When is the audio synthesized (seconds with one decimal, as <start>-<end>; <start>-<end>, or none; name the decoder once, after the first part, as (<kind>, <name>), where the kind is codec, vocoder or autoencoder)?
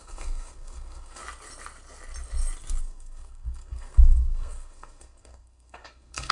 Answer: 0.0-1.2 (codec, SNAC); 2.8-6.3